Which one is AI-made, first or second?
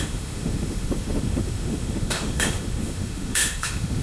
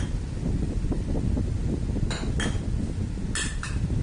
first